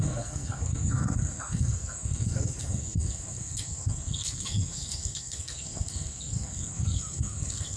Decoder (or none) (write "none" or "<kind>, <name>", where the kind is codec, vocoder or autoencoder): codec, SNAC